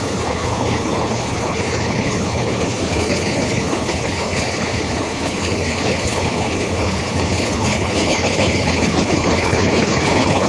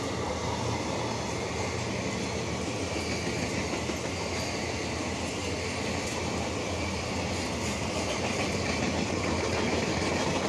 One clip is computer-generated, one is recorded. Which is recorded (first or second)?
second